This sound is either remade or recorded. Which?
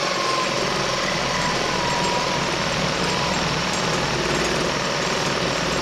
recorded